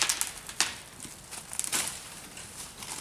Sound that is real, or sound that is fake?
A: real